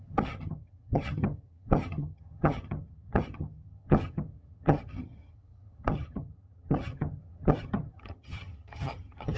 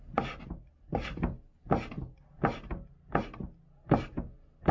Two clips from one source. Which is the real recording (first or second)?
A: second